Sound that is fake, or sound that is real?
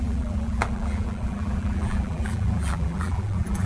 fake